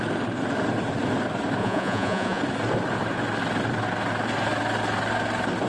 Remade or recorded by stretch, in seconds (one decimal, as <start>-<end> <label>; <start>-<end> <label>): 0.0-1.6 recorded; 1.6-2.4 remade; 2.4-5.7 recorded